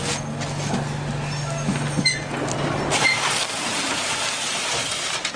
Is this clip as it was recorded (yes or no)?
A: yes